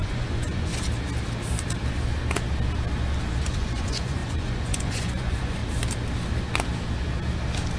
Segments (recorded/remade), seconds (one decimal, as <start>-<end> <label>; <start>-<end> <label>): 0.0-0.7 remade; 0.7-3.4 recorded; 3.4-5.6 remade; 5.6-7.8 recorded